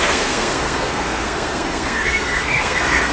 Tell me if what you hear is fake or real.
fake